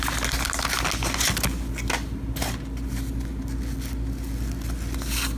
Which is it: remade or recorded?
recorded